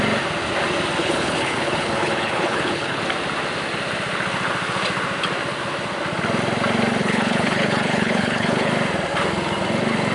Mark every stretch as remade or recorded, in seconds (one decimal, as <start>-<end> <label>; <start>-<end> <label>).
0.0-1.0 recorded; 1.0-3.0 remade; 3.0-7.0 recorded; 7.0-8.7 remade; 8.7-10.1 recorded